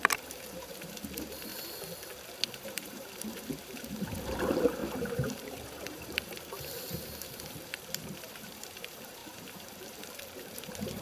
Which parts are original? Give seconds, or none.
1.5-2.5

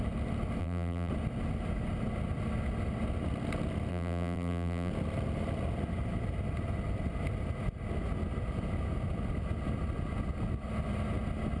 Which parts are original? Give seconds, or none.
0.0-0.6; 1.1-3.9; 4.9-11.6

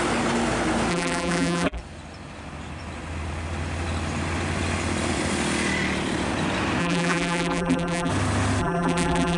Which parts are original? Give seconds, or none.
0.0-0.9; 1.8-6.8; 8.1-8.6